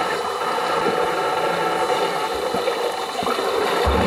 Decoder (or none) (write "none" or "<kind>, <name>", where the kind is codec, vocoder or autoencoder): none